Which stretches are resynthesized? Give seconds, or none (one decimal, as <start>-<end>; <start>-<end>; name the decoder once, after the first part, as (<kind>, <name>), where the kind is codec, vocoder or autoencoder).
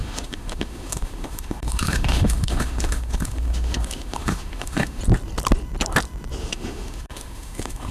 0.0-5.0 (autoencoder, DAC-VAE); 6.4-7.9